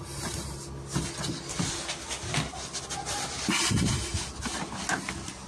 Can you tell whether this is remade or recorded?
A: recorded